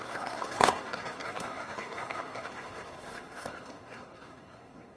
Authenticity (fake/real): fake